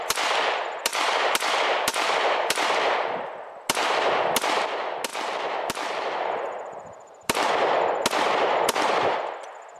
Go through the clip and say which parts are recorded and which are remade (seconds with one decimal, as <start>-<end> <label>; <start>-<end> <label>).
0.0-0.9 recorded; 0.9-1.5 remade; 1.5-1.9 recorded; 1.9-2.6 remade; 2.6-5.1 recorded; 5.1-7.5 remade; 7.5-9.8 recorded